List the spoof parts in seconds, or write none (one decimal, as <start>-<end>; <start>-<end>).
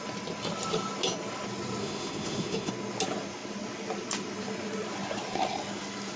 1.8-2.7